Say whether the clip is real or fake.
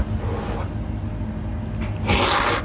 real